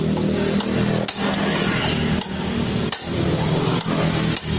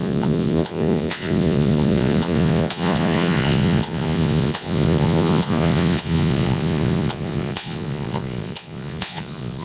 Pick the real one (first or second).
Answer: first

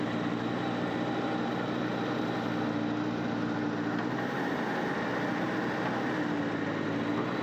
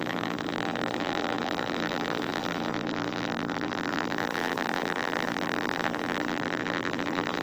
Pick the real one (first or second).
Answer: first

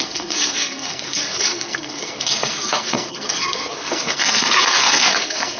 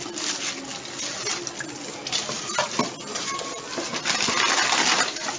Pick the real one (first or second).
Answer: second